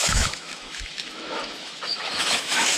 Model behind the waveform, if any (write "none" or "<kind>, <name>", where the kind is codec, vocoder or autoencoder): autoencoder, DAC-VAE